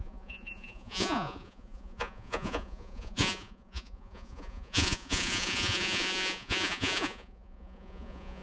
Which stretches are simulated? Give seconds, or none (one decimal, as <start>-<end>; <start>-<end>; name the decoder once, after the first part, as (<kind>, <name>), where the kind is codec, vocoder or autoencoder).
0.0-8.4 (vocoder, Vocos)